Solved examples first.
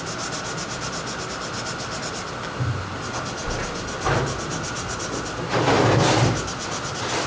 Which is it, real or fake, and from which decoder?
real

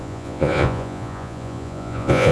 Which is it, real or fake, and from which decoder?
fake, vocoder, Vocos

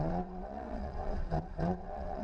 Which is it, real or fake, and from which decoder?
fake, vocoder, WaveNeXt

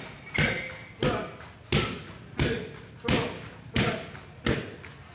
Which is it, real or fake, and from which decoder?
real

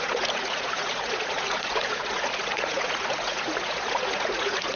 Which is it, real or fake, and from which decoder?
fake, vocoder, Vocos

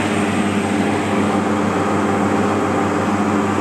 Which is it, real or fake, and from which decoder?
real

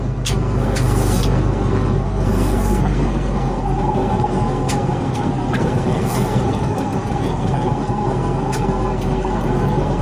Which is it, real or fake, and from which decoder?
fake, codec, SNAC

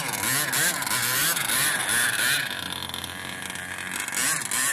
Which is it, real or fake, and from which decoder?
real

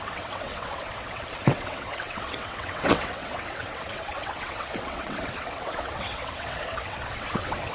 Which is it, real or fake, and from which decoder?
fake, vocoder, WaveNeXt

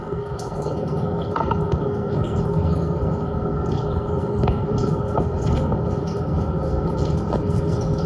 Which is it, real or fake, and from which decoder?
fake, codec, SNAC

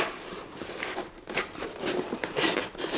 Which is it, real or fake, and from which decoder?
real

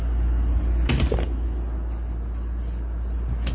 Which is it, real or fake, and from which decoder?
real